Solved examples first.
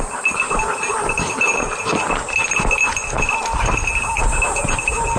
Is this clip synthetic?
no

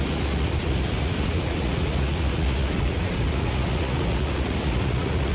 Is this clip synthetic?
yes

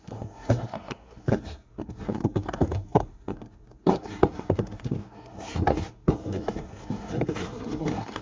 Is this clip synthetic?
yes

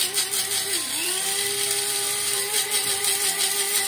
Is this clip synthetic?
yes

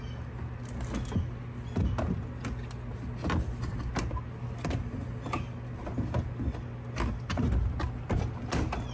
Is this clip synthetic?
no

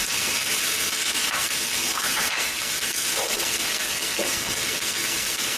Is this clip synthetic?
yes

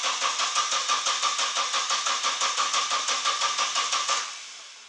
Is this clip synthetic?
no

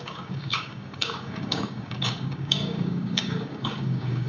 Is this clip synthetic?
yes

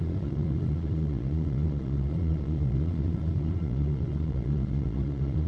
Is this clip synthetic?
yes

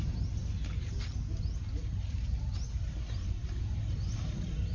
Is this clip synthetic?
no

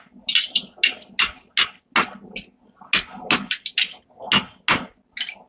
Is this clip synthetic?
no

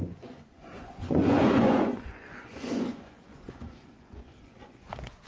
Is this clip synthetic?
yes